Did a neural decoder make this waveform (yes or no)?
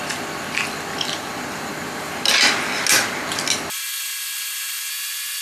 no